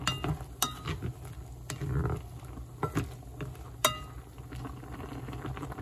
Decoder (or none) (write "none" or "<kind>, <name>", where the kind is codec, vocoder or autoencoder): none